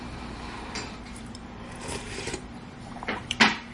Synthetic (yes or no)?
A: yes